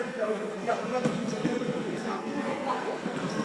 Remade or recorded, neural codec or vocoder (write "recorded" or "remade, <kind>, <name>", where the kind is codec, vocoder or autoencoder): remade, codec, SNAC